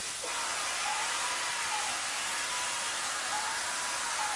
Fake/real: real